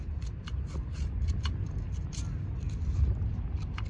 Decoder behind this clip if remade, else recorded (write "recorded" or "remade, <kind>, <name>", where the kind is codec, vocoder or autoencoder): recorded